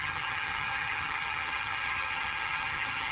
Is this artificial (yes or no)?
yes